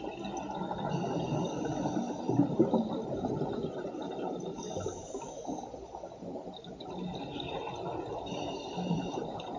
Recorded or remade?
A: recorded